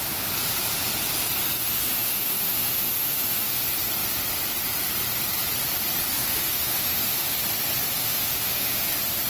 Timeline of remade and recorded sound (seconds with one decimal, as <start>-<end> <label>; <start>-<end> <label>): 0.0-1.6 recorded; 1.6-3.6 remade; 3.6-6.1 recorded; 6.1-7.3 remade; 7.3-8.0 recorded; 8.0-8.9 remade; 8.9-9.3 recorded